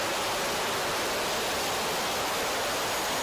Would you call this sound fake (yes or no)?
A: no